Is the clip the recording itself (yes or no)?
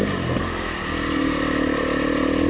yes